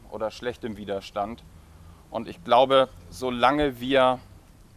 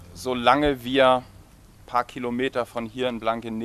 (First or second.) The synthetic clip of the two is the first